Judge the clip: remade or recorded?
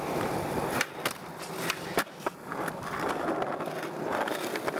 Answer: recorded